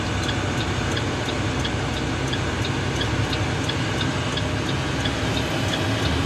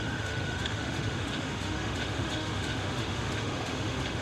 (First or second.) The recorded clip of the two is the first